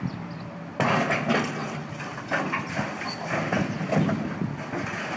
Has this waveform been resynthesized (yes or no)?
no